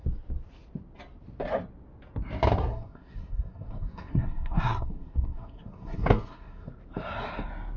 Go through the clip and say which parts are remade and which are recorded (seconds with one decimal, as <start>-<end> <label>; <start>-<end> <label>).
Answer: 0.0-2.6 recorded; 2.6-6.7 remade; 6.7-7.8 recorded

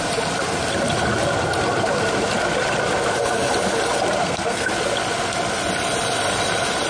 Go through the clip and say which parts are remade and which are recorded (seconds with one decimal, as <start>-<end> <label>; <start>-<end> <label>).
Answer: 0.0-4.2 recorded; 4.2-4.7 remade; 4.7-6.9 recorded

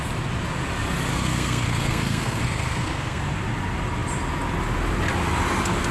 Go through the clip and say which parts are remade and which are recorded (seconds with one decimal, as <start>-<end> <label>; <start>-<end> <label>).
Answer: 0.0-1.1 recorded; 1.1-3.2 remade; 3.2-5.9 recorded

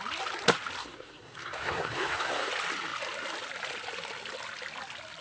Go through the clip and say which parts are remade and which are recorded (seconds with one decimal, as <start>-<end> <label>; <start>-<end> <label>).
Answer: 0.0-0.8 recorded; 0.8-2.5 remade; 2.5-5.2 recorded

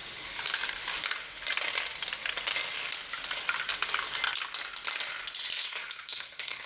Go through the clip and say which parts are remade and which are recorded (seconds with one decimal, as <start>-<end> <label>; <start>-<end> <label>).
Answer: 0.0-5.6 recorded; 5.6-6.7 remade